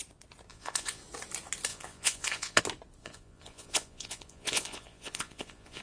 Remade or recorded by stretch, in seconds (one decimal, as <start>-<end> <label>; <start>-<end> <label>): 0.0-0.5 recorded; 0.5-1.0 remade; 1.0-1.7 recorded; 1.7-2.6 remade; 2.6-3.0 recorded; 3.0-5.8 remade